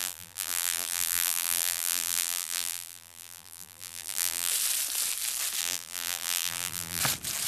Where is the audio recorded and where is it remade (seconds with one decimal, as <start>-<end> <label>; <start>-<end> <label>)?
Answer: 0.0-4.5 remade; 4.5-5.6 recorded; 5.6-7.0 remade; 7.0-7.5 recorded